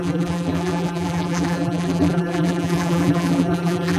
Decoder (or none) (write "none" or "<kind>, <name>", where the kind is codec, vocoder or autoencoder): vocoder, BigVGAN v2